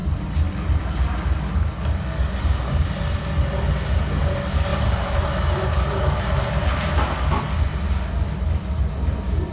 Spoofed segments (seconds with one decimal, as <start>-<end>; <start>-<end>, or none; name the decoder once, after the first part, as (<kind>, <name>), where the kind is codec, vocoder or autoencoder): none